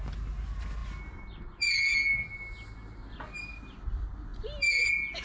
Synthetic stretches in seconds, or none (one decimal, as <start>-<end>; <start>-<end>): none